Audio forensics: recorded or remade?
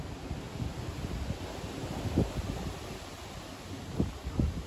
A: recorded